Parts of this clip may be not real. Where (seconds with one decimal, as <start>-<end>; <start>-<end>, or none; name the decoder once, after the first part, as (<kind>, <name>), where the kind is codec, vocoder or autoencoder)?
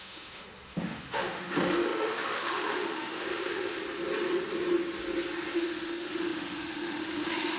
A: 0.0-3.8 (autoencoder, DAC-VAE); 5.5-7.6